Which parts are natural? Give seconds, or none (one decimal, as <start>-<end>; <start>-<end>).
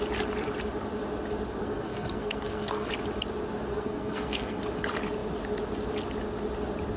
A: 0.0-1.6; 2.9-3.7; 4.6-7.0